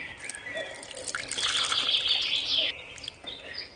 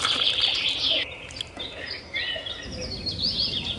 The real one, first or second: first